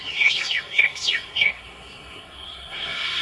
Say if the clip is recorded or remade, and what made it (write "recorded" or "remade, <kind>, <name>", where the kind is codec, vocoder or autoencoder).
remade, codec, SNAC